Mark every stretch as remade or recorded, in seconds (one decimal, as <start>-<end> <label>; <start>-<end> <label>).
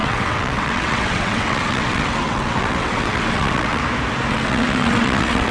0.0-3.8 remade; 3.8-4.3 recorded; 4.3-5.5 remade